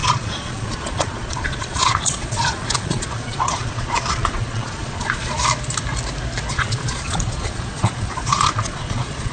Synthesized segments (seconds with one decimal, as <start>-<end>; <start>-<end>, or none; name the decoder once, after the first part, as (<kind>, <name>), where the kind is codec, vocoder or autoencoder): 0.0-5.4 (vocoder, Vocos); 6.5-9.3